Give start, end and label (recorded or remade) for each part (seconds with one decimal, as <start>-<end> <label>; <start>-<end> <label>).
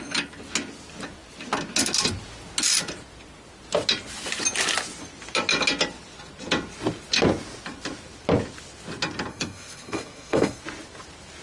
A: 0.0-9.3 recorded; 9.3-10.6 remade; 10.6-11.4 recorded